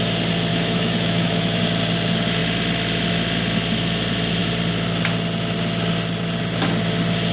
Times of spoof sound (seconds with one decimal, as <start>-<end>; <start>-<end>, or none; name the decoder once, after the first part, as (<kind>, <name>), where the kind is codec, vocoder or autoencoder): 0.5-1.6 (autoencoder, DAC-VAE)